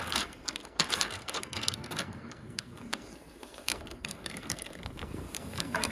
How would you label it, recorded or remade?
remade